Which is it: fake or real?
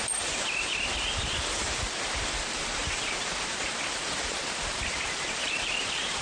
fake